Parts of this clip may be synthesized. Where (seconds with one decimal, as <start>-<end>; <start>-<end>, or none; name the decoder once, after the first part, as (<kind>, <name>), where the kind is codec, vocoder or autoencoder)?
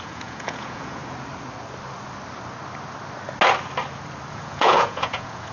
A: 0.0-1.0 (vocoder, Vocos); 4.3-5.5